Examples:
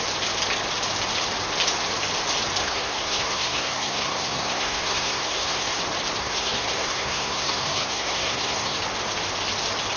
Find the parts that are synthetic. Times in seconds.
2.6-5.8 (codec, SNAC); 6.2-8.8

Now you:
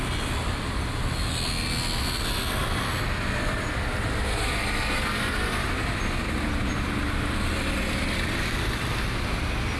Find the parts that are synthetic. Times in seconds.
none

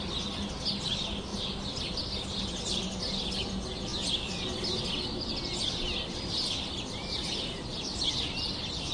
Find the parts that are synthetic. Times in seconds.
none

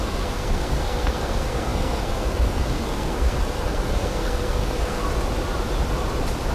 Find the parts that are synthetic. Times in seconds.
0.0-5.0 (codec, SNAC)

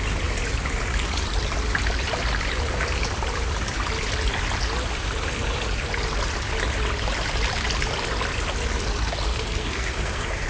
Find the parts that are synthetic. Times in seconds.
9.3-10.5 (codec, SNAC)

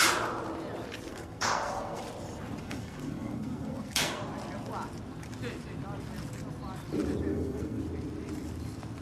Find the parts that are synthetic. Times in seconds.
1.1-2.0 (codec, SNAC); 2.6-4.2; 7.3-7.8

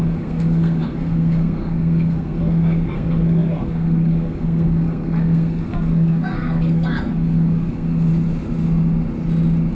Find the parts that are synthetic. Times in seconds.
0.0-8.1 (codec, SNAC)

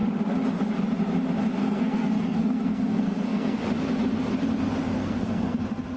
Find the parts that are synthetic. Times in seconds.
1.6-3.6 (codec, SNAC); 5.0-5.6